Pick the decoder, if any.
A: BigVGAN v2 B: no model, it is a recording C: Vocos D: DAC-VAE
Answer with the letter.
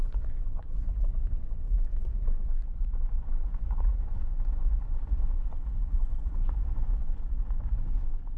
C